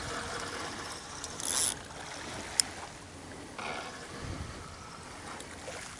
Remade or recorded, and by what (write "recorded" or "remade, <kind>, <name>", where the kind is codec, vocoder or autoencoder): recorded